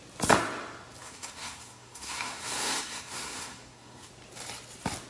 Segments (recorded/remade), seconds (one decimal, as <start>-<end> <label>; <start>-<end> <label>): 0.0-1.0 recorded; 1.0-4.1 remade; 4.1-5.1 recorded